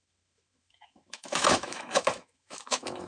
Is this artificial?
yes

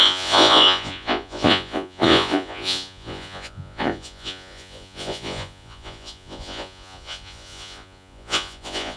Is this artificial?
yes